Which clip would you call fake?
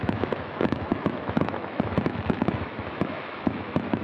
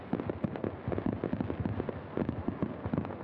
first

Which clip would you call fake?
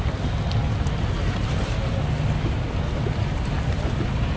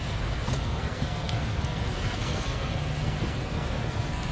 second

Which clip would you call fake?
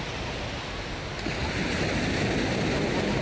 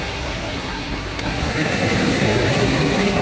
second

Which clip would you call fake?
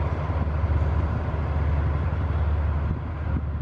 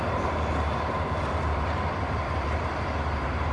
second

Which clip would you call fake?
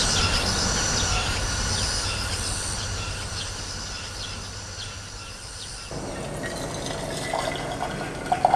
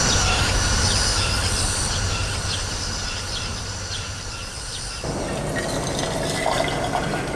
second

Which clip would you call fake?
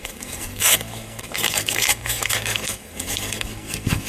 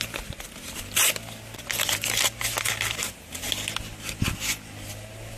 first